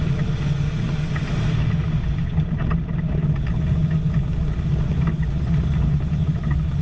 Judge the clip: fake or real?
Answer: real